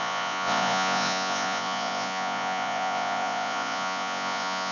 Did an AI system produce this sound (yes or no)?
yes